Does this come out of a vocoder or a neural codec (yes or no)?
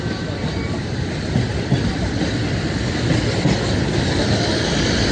no